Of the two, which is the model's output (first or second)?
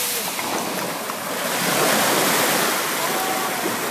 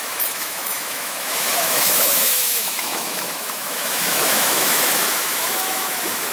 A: second